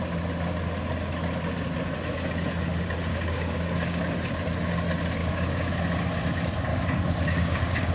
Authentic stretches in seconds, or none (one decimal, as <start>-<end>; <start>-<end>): 0.0-3.1; 4.0-5.2; 5.7-6.7